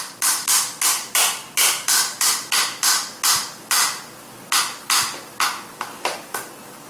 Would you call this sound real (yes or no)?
yes